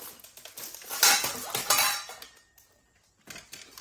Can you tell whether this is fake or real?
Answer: real